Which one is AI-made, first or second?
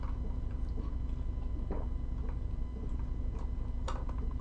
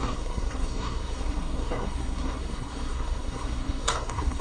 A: second